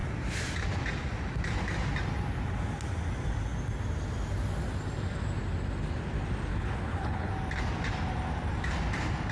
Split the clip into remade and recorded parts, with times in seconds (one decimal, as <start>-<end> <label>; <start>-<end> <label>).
0.0-6.5 recorded; 6.5-7.3 remade; 7.3-9.3 recorded